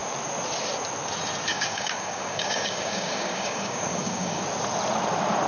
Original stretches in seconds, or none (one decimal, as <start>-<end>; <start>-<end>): 0.0-1.5; 4.4-5.5